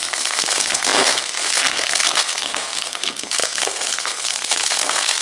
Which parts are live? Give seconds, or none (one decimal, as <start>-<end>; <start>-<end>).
none